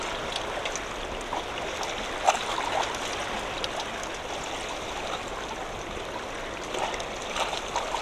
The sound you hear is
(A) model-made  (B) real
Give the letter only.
B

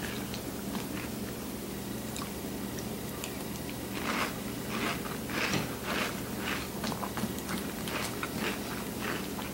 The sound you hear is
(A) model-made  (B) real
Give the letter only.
B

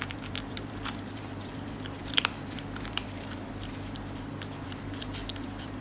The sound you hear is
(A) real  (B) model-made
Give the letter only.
B